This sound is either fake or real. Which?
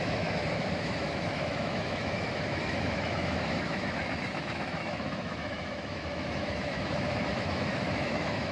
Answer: fake